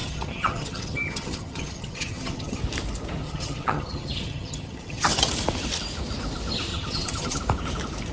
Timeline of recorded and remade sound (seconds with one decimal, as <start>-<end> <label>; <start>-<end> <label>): 0.0-2.6 remade; 2.6-3.2 recorded; 3.2-5.3 remade; 5.3-6.7 recorded; 6.7-7.4 remade; 7.4-8.1 recorded

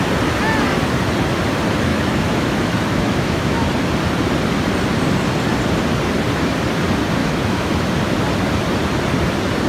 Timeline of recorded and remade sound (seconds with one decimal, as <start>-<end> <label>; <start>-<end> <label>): 0.0-1.9 recorded; 1.9-3.7 remade; 3.7-7.2 recorded; 7.2-7.8 remade; 7.8-9.7 recorded

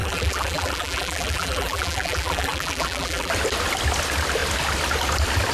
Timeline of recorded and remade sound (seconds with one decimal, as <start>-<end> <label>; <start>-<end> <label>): 0.0-3.3 remade; 3.3-5.5 recorded

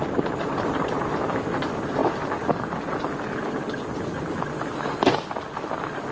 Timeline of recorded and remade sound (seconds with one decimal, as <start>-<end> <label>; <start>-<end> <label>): 0.0-2.0 remade; 2.0-6.1 recorded

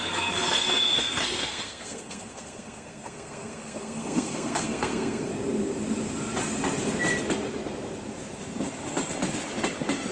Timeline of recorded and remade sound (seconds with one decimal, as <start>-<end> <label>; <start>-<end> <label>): 0.0-5.3 remade; 5.3-10.1 recorded

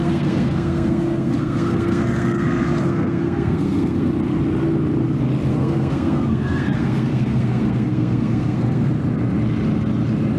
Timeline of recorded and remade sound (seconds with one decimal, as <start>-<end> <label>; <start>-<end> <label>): 0.0-4.1 remade; 4.1-5.5 recorded; 5.5-8.9 remade; 8.9-10.4 recorded

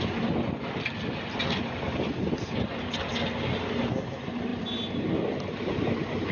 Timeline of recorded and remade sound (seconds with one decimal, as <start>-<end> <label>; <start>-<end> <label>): 0.0-6.3 recorded